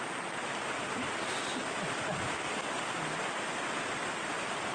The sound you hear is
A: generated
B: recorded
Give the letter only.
B